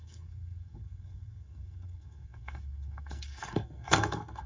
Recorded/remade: remade